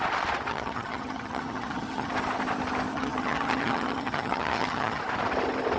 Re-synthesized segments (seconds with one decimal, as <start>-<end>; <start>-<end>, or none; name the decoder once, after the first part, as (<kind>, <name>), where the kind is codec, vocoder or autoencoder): 0.5-2.1 (vocoder, HiFi-GAN); 2.9-5.0